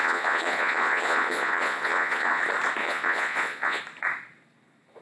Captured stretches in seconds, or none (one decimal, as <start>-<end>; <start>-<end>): 2.4-2.8; 3.8-5.0